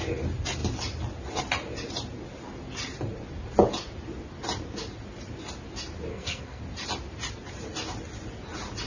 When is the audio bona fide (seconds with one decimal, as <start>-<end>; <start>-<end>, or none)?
0.0-6.1; 6.6-8.9